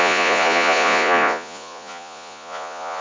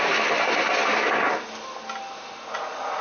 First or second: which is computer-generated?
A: first